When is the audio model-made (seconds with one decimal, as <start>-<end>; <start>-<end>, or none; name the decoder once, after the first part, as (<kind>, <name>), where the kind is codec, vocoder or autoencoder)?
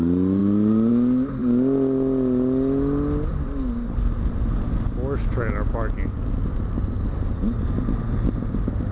none